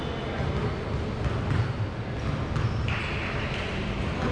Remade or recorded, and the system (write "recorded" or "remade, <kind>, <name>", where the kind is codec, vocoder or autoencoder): recorded